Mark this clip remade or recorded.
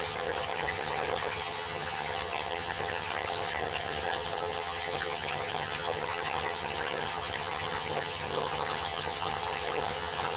remade